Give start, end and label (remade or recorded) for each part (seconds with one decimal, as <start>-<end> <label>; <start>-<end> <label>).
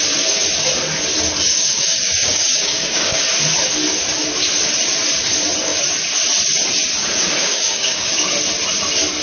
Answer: 0.0-1.5 recorded; 1.5-3.2 remade; 3.2-7.4 recorded; 7.4-8.3 remade; 8.3-9.2 recorded